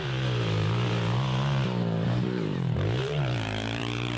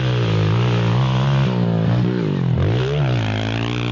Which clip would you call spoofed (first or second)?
first